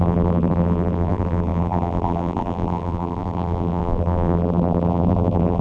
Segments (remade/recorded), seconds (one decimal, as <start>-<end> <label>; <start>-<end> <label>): 0.0-5.6 remade